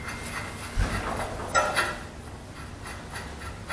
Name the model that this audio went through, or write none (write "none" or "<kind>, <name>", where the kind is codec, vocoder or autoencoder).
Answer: none